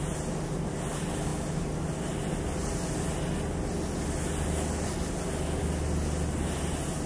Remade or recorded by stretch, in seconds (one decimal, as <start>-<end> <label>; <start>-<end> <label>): 0.0-7.1 recorded